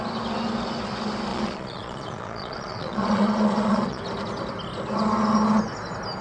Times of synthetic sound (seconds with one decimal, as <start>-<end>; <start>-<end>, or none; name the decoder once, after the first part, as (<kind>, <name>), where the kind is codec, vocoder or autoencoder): 1.3-4.0 (vocoder, Vocos)